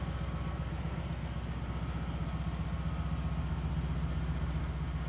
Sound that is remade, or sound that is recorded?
recorded